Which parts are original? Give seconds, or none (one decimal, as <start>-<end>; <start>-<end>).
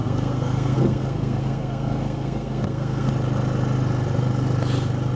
3.1-5.2